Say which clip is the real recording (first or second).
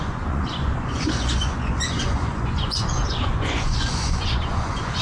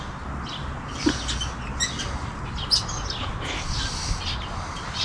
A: second